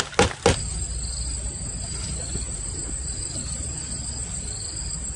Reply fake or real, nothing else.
real